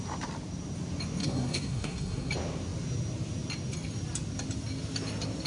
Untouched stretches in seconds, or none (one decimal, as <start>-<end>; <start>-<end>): 0.0-1.2; 2.3-5.5